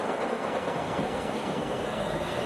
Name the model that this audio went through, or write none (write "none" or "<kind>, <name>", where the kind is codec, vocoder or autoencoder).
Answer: codec, SNAC